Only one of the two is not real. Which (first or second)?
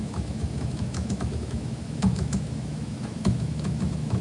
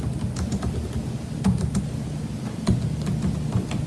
first